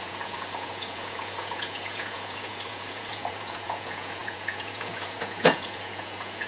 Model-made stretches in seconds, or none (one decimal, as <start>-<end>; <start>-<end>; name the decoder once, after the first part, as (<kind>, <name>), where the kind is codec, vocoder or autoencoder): 0.0-6.5 (vocoder, Vocos)